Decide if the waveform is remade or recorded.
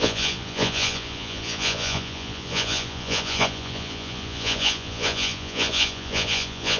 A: remade